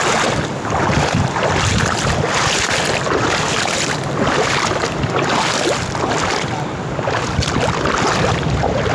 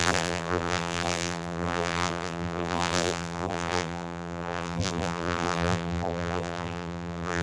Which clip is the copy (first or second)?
second